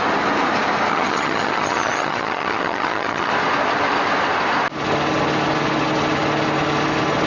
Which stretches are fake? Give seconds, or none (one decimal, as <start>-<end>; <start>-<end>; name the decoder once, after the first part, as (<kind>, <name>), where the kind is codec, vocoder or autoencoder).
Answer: 0.9-3.3 (vocoder, HiFi-GAN)